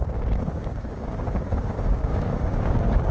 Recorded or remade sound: remade